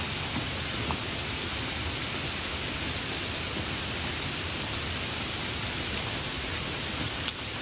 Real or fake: real